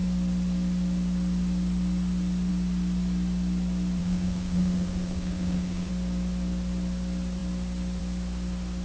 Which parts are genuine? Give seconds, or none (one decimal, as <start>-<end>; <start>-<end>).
0.0-4.0; 5.9-8.8